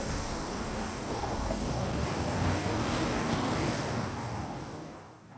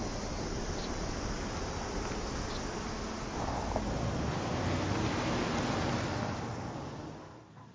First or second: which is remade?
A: first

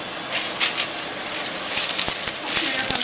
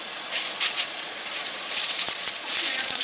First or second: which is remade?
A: second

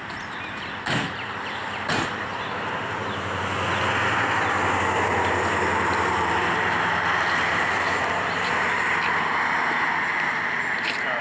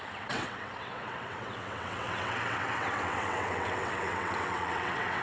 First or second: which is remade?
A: second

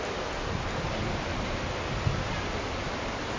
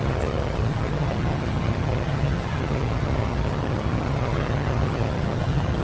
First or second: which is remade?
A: second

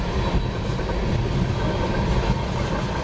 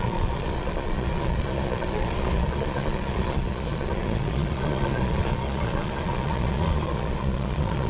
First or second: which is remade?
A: second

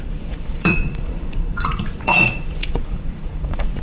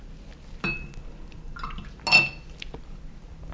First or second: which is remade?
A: first